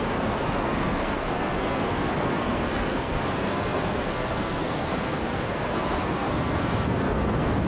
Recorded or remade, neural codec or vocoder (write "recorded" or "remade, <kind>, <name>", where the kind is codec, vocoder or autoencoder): remade, codec, SNAC